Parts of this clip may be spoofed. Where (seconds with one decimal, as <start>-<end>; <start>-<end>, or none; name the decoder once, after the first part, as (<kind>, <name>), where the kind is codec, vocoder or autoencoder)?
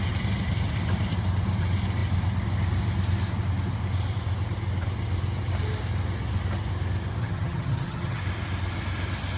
7.2-8.2 (vocoder, HiFi-GAN)